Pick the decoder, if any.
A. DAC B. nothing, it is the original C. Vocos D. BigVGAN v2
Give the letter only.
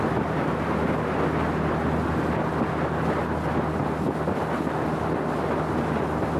B